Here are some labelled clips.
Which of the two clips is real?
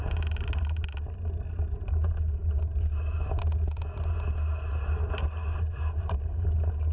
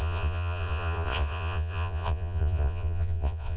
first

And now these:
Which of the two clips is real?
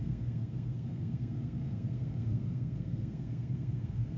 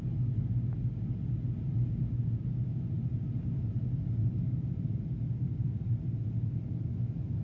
second